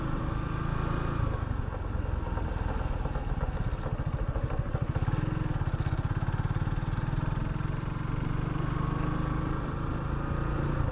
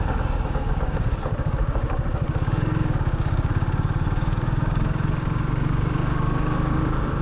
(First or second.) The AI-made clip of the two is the second